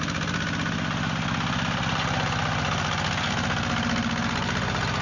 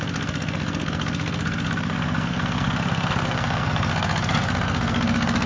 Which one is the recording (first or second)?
first